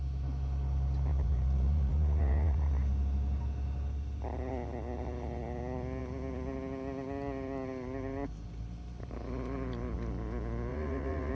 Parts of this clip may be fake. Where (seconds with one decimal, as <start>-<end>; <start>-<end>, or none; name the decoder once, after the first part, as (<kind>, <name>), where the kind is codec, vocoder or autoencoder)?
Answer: 1.1-2.7 (vocoder, Vocos); 10.7-11.3